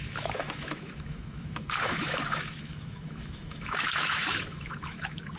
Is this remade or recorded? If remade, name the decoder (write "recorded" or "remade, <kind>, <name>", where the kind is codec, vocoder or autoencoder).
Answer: remade, autoencoder, DAC-VAE